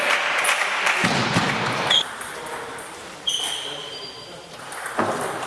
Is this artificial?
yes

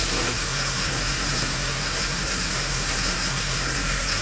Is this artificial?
yes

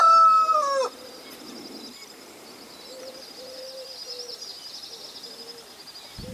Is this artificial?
no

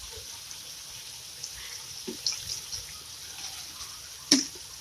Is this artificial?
yes